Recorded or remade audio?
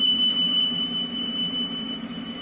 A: remade